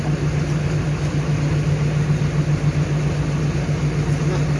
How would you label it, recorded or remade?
recorded